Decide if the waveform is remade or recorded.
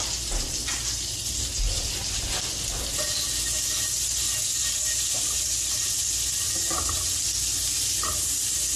recorded